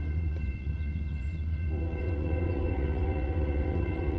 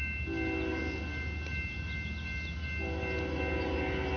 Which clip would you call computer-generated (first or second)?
first